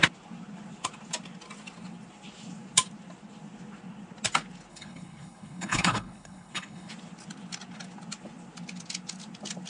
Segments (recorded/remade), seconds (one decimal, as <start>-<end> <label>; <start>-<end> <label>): 0.0-4.7 recorded; 4.7-6.9 remade; 6.9-9.7 recorded